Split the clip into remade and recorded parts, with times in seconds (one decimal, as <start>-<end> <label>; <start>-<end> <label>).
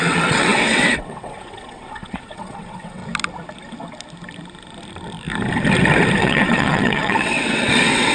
0.0-3.0 remade; 3.0-6.2 recorded; 6.2-8.1 remade